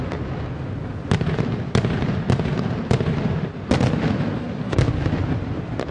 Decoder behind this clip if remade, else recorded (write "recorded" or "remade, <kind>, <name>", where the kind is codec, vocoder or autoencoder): recorded